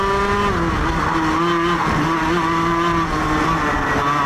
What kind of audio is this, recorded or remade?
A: recorded